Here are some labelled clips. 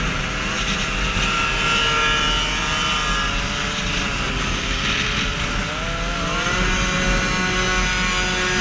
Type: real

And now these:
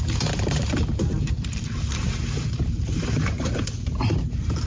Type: fake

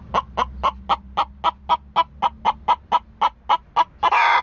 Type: real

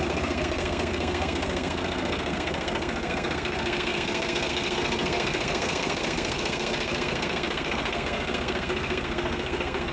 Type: fake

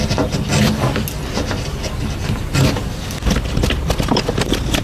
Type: real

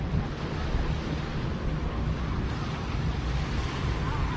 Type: real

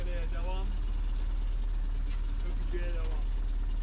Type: real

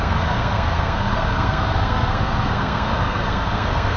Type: fake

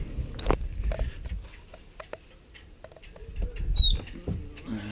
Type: real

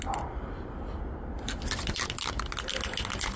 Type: real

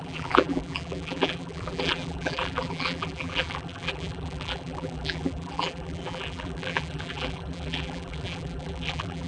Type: fake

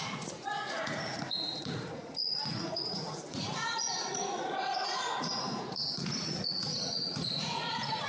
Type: fake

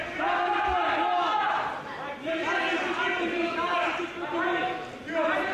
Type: real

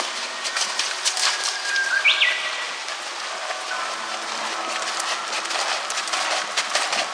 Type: real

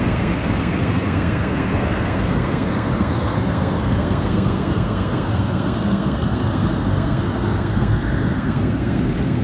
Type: fake